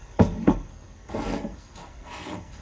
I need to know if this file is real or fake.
fake